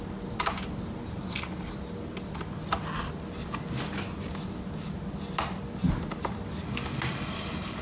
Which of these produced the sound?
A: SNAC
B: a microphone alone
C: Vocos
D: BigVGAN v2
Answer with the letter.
B